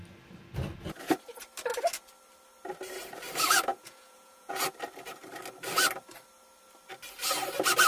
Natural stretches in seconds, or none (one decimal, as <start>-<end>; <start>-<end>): 0.0-3.7; 4.6-7.9